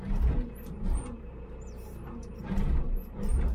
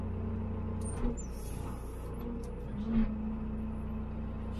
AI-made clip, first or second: first